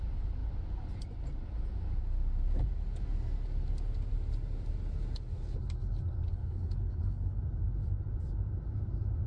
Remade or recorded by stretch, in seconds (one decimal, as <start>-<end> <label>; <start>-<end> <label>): 0.0-6.3 recorded; 6.3-7.4 remade; 7.4-9.3 recorded